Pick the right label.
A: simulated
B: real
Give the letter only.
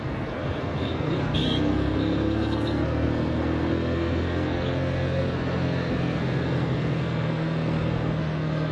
A